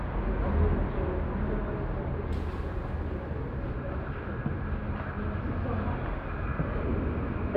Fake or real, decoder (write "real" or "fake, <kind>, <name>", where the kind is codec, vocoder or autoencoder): real